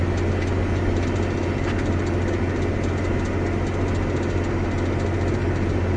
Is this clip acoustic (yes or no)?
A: yes